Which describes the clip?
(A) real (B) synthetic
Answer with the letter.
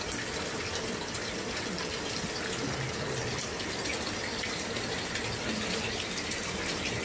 A